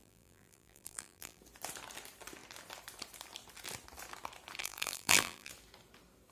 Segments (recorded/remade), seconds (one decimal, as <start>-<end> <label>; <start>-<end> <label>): 0.0-1.4 remade; 1.4-4.6 recorded; 4.6-5.5 remade; 5.5-6.3 recorded